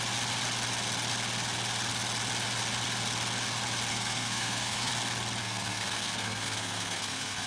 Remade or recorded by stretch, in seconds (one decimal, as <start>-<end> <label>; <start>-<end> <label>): 0.0-3.9 recorded; 3.9-4.9 remade; 4.9-5.4 recorded; 5.4-7.5 remade